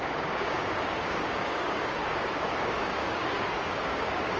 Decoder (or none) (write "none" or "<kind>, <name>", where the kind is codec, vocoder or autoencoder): codec, DAC